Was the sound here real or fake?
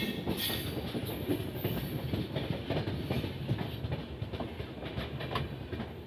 real